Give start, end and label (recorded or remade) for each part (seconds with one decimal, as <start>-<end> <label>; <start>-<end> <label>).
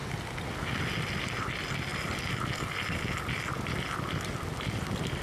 0.0-5.2 recorded